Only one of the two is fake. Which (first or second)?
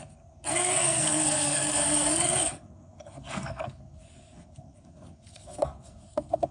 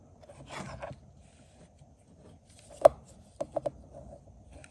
first